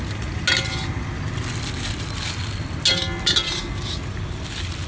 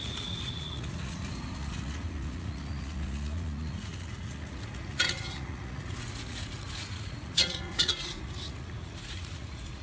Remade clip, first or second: second